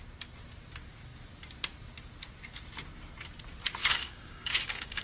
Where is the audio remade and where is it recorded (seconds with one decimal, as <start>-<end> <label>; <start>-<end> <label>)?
0.0-3.8 recorded; 3.8-5.0 remade